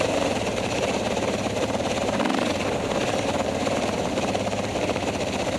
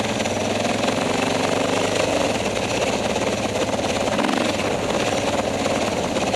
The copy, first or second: first